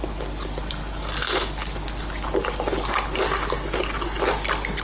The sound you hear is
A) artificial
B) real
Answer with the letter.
B